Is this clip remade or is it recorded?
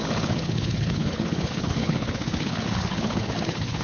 remade